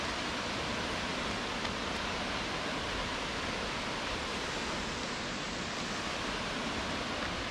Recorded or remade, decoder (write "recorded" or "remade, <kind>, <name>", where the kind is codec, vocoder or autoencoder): recorded